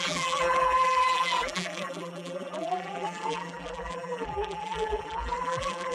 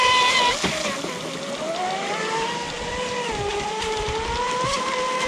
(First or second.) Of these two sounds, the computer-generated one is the first